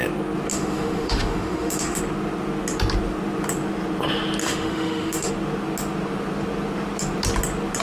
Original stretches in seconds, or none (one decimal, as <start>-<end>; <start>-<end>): 0.0-0.5; 2.0-4.4; 5.3-7.8